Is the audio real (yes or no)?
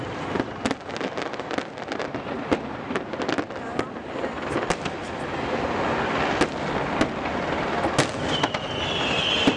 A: yes